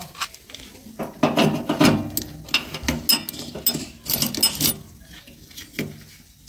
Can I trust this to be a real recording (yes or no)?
yes